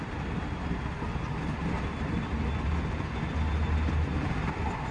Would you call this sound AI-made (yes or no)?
no